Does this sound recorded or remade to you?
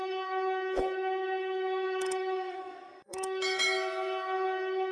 remade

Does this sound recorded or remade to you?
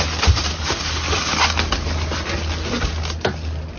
recorded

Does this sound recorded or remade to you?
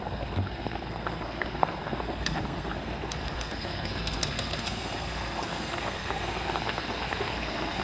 remade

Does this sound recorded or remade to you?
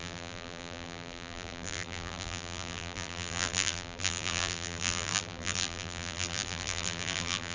remade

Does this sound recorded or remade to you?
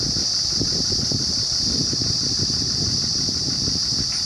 recorded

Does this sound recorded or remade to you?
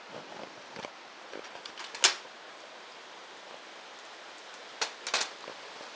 recorded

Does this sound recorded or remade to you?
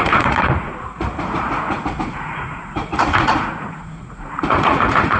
remade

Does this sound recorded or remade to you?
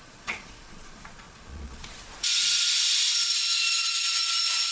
remade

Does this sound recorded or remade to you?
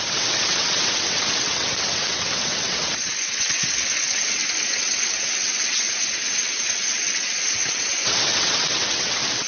remade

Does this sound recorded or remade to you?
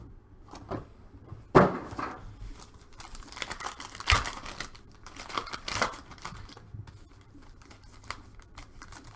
remade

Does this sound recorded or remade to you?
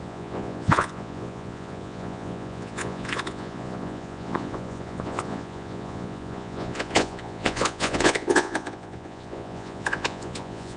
remade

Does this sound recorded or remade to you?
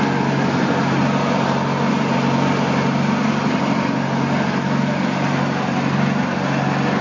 recorded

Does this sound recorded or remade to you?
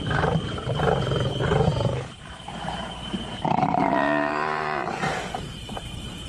remade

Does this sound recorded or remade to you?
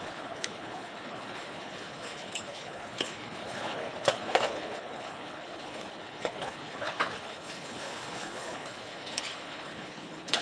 remade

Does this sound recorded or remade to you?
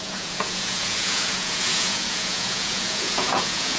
remade